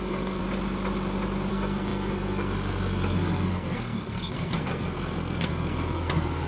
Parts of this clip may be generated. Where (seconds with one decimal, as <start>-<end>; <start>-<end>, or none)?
0.0-0.4; 1.5-6.5